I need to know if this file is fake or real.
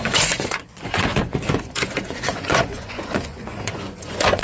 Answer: fake